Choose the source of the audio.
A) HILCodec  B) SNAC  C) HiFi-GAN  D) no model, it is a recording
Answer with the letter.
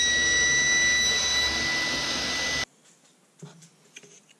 D